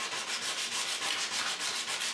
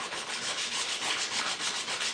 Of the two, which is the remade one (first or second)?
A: second